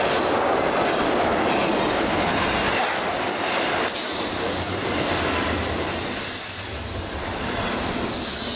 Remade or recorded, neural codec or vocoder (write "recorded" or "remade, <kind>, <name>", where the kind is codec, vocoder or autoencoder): recorded